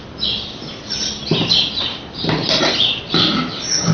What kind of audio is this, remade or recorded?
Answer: recorded